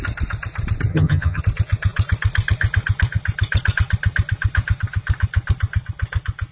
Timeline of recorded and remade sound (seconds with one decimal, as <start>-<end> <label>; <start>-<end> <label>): 0.0-0.9 recorded; 0.9-1.4 remade; 1.4-6.5 recorded